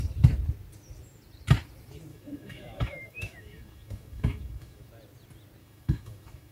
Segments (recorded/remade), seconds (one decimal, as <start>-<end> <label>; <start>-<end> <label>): 0.0-2.1 recorded; 2.1-4.9 remade; 4.9-5.6 recorded; 5.6-6.5 remade